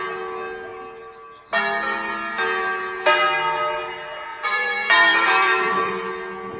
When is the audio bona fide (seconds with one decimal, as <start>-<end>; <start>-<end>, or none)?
0.0-4.3; 5.9-6.6